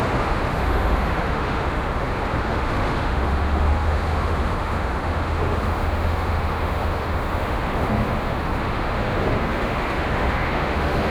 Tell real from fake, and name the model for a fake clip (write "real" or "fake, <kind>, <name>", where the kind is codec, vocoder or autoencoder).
fake, autoencoder, DAC-VAE